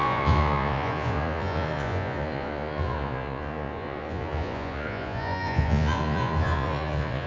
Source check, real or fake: fake